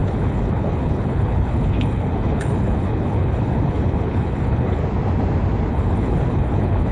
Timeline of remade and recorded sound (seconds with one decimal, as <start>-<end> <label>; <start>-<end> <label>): 0.0-4.8 remade; 4.8-5.7 recorded; 5.7-6.9 remade